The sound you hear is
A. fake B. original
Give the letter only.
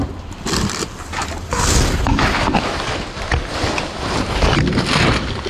B